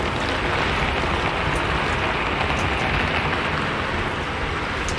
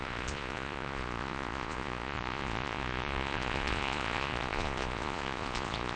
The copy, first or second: second